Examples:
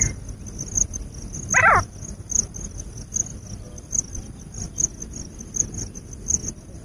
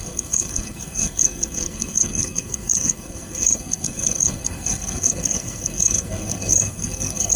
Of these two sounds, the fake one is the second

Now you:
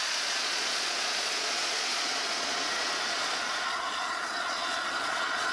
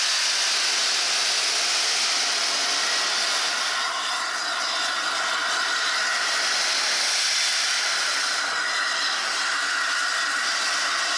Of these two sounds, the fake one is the first